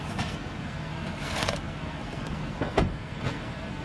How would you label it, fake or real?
fake